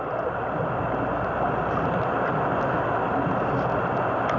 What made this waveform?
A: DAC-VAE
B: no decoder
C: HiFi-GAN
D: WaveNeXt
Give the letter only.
B